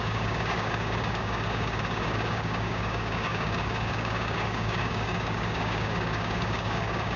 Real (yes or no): no